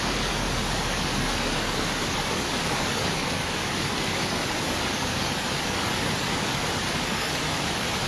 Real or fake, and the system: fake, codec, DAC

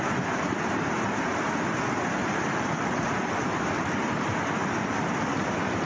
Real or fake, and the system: real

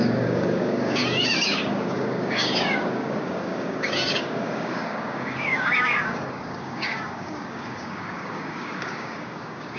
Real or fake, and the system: fake, codec, DAC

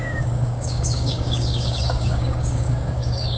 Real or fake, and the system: fake, codec, DAC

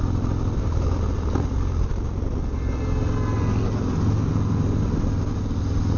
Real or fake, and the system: real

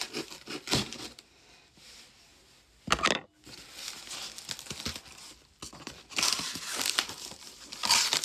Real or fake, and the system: real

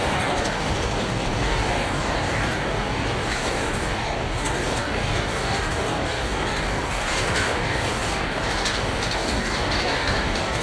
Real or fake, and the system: fake, codec, DAC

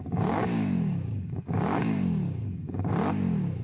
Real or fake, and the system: fake, codec, DAC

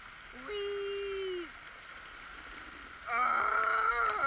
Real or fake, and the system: real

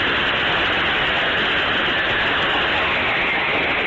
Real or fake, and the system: real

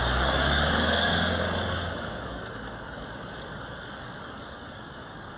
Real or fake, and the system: fake, codec, DAC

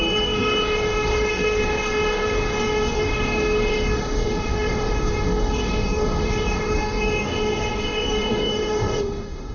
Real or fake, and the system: fake, codec, DAC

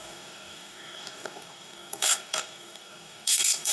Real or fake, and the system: fake, codec, DAC